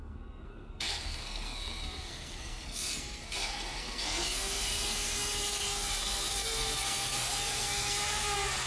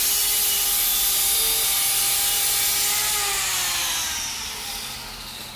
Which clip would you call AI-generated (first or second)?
first